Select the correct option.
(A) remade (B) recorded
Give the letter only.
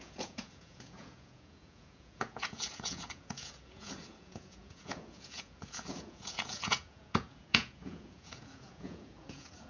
A